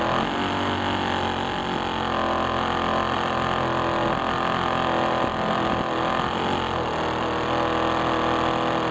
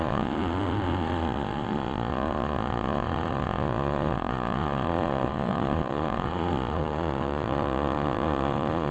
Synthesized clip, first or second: second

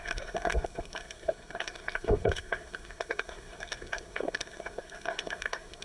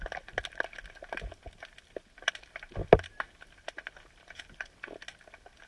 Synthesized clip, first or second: first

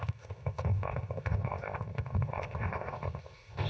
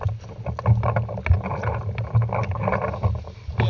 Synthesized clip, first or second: first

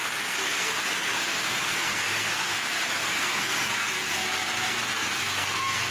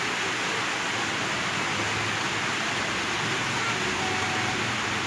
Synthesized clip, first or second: first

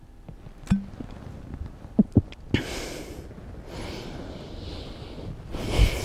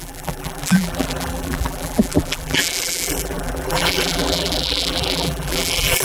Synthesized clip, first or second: second